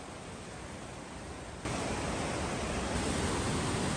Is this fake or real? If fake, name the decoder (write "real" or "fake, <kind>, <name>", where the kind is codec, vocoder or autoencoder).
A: real